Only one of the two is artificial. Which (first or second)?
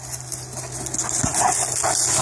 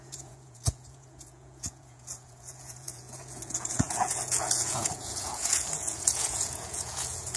second